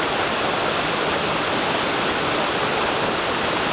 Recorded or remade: recorded